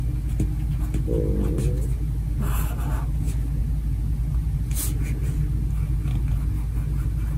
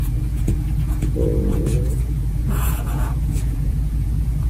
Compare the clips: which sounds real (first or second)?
first